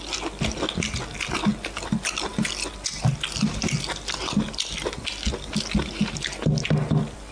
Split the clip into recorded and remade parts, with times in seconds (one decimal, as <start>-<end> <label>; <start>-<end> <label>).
0.0-7.3 recorded

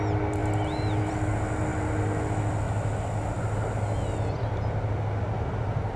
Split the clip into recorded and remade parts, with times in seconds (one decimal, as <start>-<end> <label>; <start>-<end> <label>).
0.0-6.0 recorded

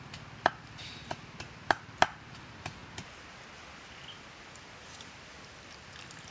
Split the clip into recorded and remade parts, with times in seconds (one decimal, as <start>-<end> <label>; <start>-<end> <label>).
0.0-6.3 recorded

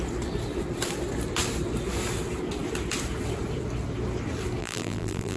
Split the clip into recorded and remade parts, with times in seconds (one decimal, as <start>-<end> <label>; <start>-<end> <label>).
0.0-4.6 recorded; 4.6-5.4 remade

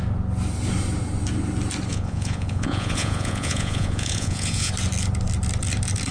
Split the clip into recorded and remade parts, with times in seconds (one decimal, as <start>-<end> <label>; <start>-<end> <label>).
0.0-1.9 recorded; 1.9-4.7 remade; 4.7-6.1 recorded

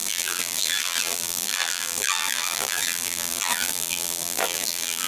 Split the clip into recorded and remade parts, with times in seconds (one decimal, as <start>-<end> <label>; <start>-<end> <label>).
0.0-5.1 remade

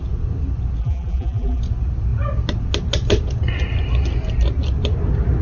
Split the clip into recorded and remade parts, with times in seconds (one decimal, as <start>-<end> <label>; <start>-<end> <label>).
0.0-0.8 recorded; 0.8-1.6 remade; 1.6-5.4 recorded

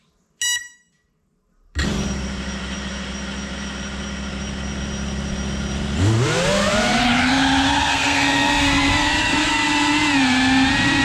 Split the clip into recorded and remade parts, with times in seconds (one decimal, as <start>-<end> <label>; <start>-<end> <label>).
0.0-7.9 recorded; 7.9-8.5 remade; 8.5-11.0 recorded